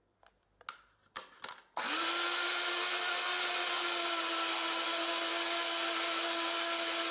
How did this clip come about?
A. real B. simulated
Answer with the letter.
A